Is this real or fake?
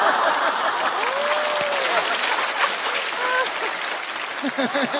real